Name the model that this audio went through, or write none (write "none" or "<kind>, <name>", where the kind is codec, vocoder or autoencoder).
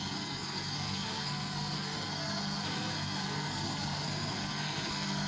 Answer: codec, SNAC